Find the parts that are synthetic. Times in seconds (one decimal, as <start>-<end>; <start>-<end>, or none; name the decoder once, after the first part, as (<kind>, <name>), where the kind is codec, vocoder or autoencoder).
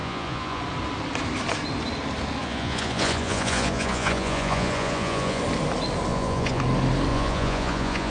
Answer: 0.0-0.6 (vocoder, Vocos); 2.4-5.4; 6.1-6.6; 7.1-8.1